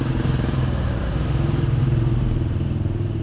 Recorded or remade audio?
remade